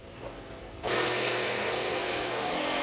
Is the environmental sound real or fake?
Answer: fake